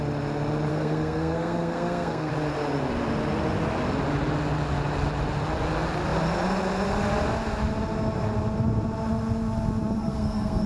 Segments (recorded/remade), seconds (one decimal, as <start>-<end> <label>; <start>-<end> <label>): 0.0-0.7 recorded; 0.7-2.3 remade; 2.3-10.0 recorded; 10.0-10.7 remade